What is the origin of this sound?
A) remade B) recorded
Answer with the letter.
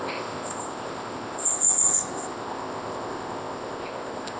A